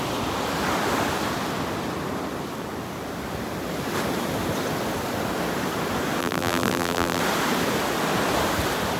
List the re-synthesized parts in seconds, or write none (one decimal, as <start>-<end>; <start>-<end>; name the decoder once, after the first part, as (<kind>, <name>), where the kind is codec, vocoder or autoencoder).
6.2-7.2 (vocoder, BigVGAN v2)